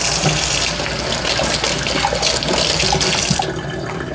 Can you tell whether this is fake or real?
real